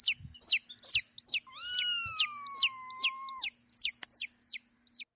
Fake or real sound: real